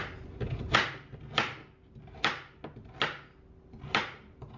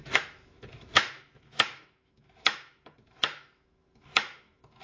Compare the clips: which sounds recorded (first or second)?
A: first